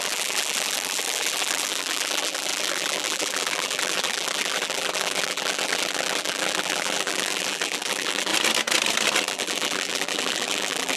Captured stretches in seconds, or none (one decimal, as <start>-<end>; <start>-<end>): 8.3-9.2